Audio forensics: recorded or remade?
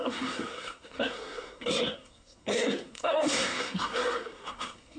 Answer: remade